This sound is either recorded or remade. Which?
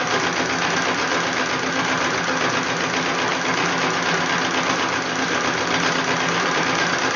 recorded